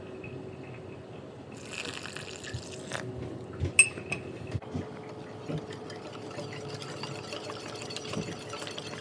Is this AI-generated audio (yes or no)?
no